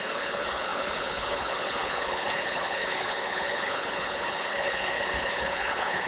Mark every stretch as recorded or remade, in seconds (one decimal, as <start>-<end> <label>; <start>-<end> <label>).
0.0-6.1 remade